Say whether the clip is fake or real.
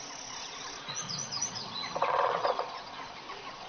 fake